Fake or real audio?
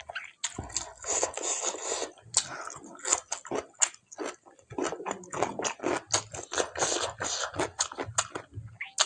real